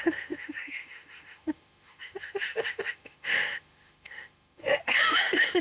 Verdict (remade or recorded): remade